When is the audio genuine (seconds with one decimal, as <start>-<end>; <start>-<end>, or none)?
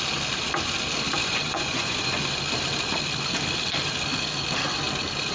0.0-1.2; 2.1-5.3